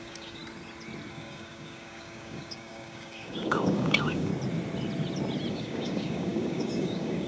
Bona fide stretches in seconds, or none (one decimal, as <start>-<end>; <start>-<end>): 0.4-1.1; 4.3-5.5